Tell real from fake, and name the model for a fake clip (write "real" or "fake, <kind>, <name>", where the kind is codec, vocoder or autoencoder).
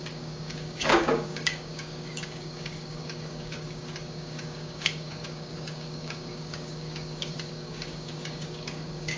fake, codec, DAC